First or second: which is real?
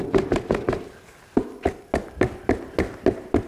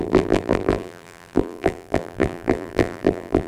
first